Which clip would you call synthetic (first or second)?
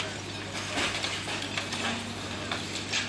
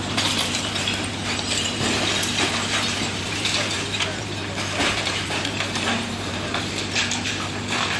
second